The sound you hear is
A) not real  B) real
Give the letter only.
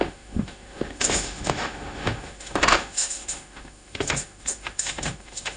A